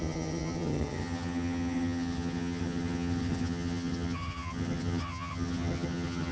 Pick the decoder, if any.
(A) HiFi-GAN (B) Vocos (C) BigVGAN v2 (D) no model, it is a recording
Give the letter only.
A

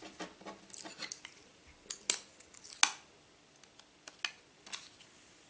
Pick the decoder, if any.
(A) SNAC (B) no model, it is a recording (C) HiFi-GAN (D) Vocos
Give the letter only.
B